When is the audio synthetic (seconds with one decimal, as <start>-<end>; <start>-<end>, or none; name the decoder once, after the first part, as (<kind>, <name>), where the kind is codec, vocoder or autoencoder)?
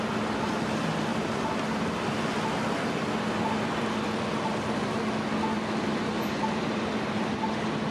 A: none